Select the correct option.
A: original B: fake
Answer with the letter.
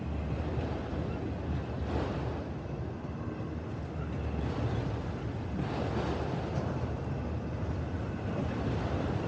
A